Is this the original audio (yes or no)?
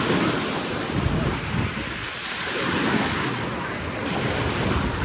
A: yes